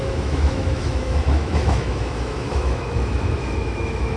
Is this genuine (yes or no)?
no